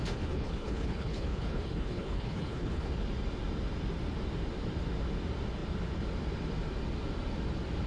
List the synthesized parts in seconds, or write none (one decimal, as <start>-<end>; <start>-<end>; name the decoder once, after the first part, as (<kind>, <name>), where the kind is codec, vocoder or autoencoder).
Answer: 0.0-2.9 (codec, HILCodec)

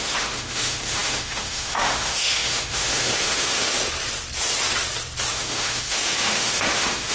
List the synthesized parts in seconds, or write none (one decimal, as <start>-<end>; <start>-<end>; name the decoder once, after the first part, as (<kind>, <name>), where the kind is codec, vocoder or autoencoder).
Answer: 0.0-3.8 (autoencoder, DAC-VAE); 5.3-7.1